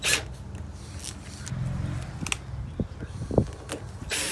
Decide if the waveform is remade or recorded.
recorded